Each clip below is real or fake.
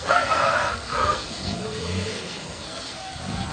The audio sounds fake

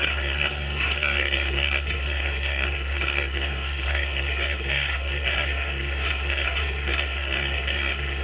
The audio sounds fake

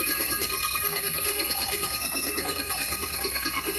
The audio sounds fake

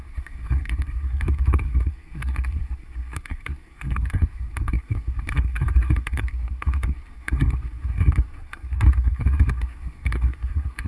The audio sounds fake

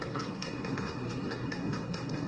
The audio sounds fake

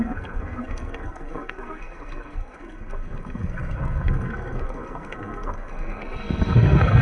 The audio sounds fake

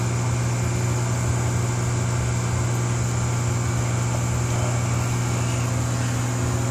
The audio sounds real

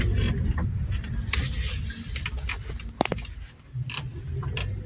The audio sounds real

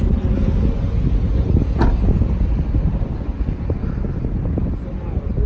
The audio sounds real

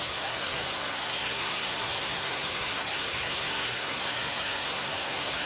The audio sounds fake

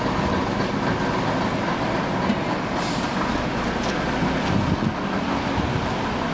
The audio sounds real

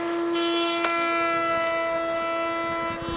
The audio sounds real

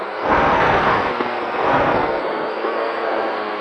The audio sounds fake